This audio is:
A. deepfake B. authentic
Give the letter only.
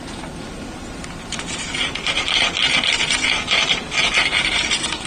A